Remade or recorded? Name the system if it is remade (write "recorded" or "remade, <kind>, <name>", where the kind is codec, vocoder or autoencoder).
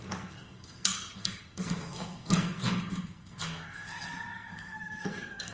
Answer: remade, codec, SNAC